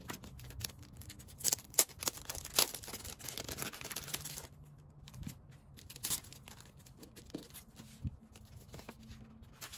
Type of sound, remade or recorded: recorded